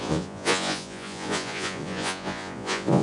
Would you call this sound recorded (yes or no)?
no